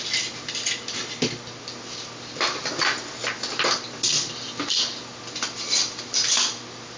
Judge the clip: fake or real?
real